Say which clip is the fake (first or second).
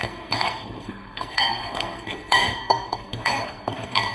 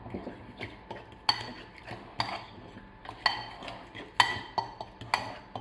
first